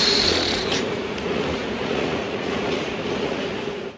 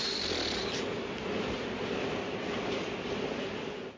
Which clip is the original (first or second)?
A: second